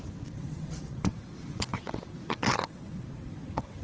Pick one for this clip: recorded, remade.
remade